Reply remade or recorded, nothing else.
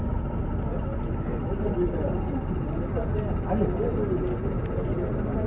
recorded